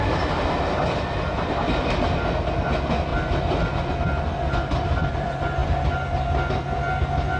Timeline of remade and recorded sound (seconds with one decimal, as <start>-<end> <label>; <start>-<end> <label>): 0.0-7.4 recorded